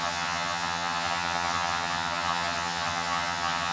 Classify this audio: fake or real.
fake